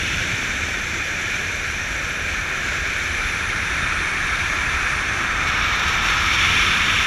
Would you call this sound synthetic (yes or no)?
yes